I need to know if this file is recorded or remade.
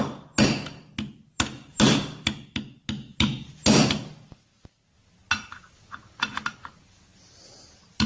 recorded